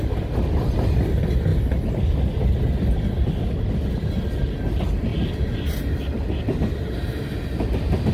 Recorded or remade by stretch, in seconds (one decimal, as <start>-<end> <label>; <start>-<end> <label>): 0.0-8.1 recorded